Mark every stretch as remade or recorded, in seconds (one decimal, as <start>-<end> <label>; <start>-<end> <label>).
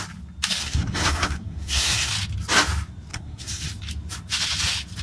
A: 0.0-0.6 recorded; 0.6-2.1 remade; 2.1-3.1 recorded; 3.1-3.7 remade; 3.7-5.0 recorded